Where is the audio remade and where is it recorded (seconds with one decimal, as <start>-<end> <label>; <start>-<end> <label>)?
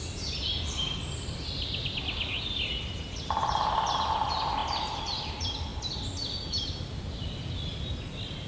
0.0-8.5 recorded